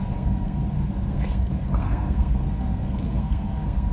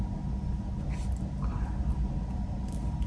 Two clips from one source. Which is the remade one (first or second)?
first